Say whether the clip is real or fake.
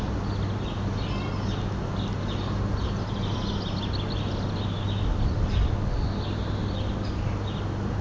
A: real